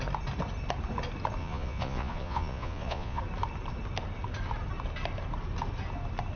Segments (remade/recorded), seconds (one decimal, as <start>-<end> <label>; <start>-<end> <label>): 0.0-1.4 recorded; 1.4-3.2 remade; 3.2-6.4 recorded